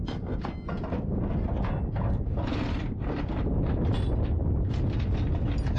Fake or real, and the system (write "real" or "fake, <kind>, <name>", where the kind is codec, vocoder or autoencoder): real